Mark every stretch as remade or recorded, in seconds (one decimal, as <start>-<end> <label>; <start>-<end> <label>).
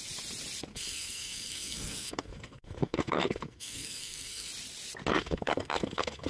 0.0-0.7 recorded; 0.7-4.5 remade; 4.5-5.1 recorded; 5.1-6.3 remade